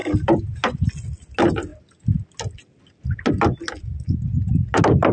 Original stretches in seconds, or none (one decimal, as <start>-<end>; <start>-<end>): 0.0-5.1